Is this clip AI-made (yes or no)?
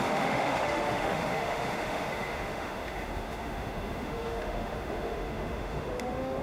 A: yes